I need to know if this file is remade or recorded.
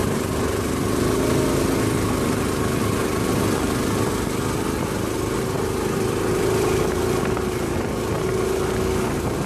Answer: recorded